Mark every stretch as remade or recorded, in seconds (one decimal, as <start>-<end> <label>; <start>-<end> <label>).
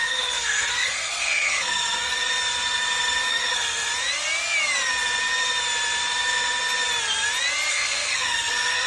0.0-2.3 remade; 2.3-3.3 recorded; 3.3-3.9 remade; 3.9-7.7 recorded; 7.7-8.9 remade